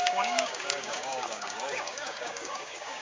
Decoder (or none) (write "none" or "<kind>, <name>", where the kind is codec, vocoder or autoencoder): codec, DAC